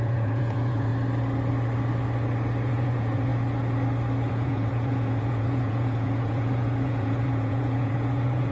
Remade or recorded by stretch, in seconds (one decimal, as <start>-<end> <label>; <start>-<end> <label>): 0.0-0.9 remade; 0.9-2.7 recorded; 2.7-3.3 remade; 3.3-4.3 recorded; 4.3-8.5 remade